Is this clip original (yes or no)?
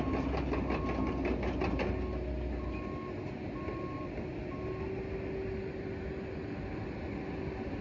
yes